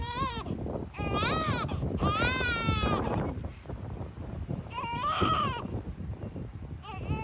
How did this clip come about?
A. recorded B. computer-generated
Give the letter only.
B